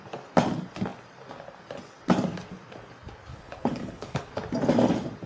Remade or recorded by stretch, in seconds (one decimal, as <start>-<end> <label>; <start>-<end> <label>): 0.0-3.3 recorded; 3.3-4.3 remade; 4.3-5.3 recorded